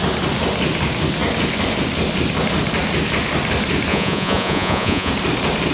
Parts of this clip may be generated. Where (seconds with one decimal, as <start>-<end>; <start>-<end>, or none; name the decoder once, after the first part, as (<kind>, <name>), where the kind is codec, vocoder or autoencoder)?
3.9-5.1 (vocoder, Vocos)